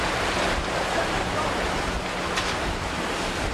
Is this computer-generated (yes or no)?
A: no